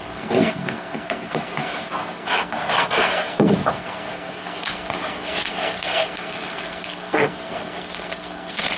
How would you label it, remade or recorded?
remade